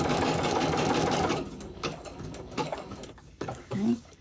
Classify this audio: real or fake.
fake